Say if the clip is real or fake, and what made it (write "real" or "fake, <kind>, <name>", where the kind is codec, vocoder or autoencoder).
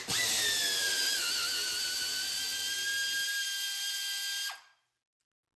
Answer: real